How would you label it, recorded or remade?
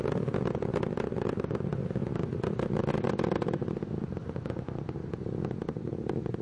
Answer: recorded